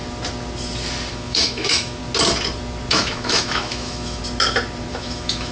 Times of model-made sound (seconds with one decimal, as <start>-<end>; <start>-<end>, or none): 1.1-2.0; 2.9-4.2; 4.9-5.5